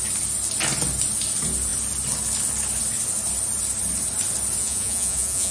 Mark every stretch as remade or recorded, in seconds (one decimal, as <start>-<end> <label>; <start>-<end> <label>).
0.0-4.6 recorded; 4.6-5.5 remade